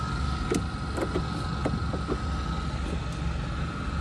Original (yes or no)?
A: yes